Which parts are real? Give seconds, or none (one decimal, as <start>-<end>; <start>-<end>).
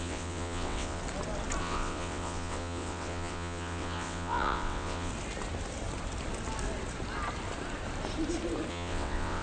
1.0-1.6; 5.1-8.7